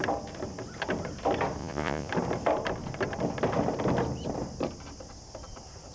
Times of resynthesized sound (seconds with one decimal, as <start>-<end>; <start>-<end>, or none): 1.6-2.1